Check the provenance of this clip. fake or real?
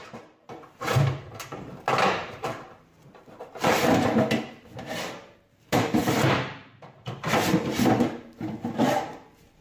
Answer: fake